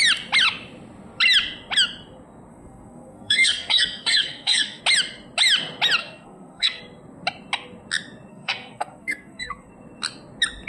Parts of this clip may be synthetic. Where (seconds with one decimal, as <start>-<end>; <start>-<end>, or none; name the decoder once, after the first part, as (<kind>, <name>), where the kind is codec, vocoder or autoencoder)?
2.5-4.8 (codec, SNAC); 6.0-6.8; 8.3-9.7